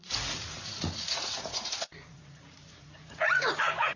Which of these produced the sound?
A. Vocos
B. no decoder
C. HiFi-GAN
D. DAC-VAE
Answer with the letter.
A